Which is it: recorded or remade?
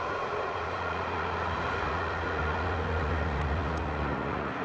remade